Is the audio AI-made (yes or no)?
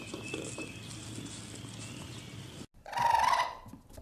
no